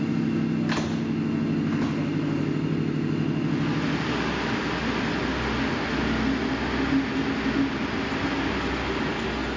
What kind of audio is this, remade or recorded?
recorded